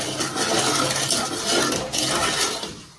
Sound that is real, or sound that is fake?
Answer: real